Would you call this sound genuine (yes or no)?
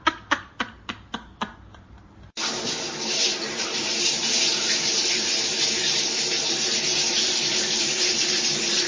no